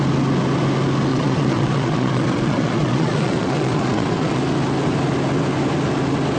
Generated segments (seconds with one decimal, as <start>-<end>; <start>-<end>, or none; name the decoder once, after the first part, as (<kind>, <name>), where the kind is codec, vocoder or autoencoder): 1.1-4.4 (vocoder, Vocos)